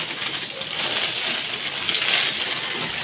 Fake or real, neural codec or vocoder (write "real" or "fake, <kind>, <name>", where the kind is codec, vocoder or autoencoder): real